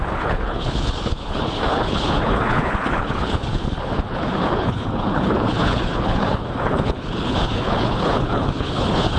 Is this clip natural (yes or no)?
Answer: no